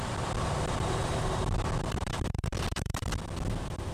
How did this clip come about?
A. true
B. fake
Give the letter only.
B